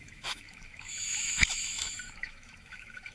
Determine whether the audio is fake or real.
fake